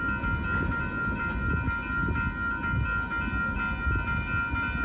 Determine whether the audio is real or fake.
real